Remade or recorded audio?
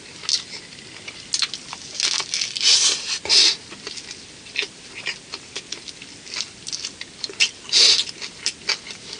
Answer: recorded